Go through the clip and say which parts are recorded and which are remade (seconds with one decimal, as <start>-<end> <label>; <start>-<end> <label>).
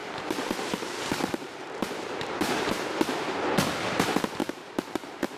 0.0-2.8 remade; 2.8-4.4 recorded; 4.4-5.4 remade